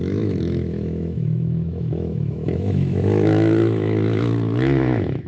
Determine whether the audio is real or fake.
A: fake